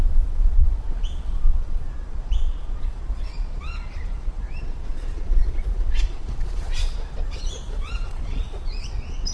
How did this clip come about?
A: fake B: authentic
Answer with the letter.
A